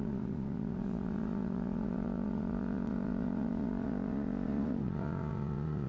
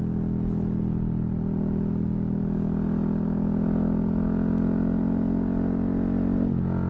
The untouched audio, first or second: second